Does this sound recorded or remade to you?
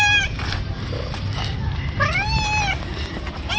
recorded